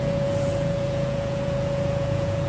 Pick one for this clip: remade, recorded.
remade